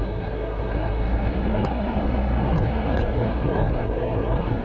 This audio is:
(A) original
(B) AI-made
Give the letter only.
B